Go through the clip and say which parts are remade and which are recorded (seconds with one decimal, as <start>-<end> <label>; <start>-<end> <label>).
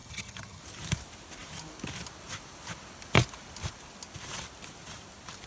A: 0.0-0.6 remade; 0.6-5.5 recorded